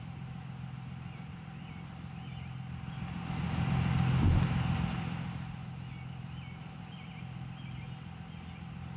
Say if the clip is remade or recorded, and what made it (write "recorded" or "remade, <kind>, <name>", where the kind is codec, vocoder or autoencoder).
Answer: recorded